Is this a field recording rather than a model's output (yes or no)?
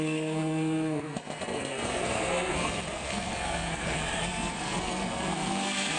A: no